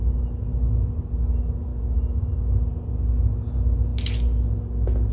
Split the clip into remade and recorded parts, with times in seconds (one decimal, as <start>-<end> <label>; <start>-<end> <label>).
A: 0.0-5.1 recorded